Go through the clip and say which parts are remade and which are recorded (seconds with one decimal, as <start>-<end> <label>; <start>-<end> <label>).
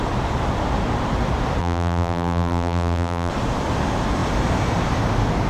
0.0-1.6 recorded; 1.6-3.3 remade; 3.3-5.5 recorded